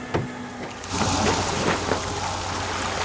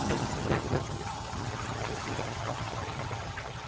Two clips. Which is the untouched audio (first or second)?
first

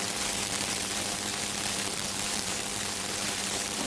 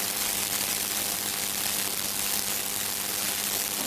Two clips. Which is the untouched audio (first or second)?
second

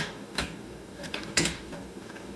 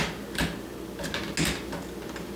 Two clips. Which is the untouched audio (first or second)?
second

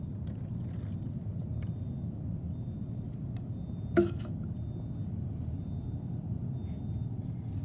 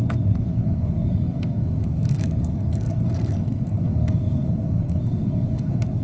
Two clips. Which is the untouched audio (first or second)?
first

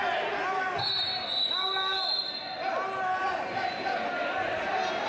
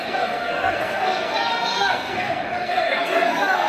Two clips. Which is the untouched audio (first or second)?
first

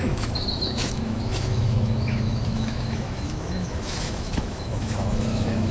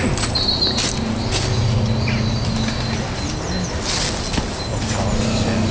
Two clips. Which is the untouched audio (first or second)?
second